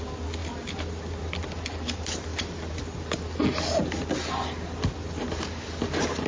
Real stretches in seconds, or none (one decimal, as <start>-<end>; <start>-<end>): 0.0-6.3